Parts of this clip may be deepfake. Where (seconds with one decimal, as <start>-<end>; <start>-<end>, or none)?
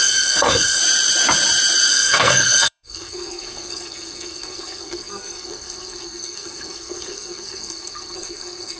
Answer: 0.0-0.8; 1.9-8.8